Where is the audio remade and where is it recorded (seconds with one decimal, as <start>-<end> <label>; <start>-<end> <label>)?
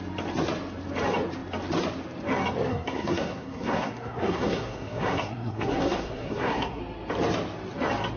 0.0-2.7 recorded; 2.7-6.8 remade; 6.8-8.2 recorded